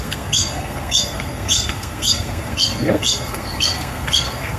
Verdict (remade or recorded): remade